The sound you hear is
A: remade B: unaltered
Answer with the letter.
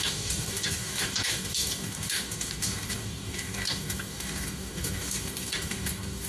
A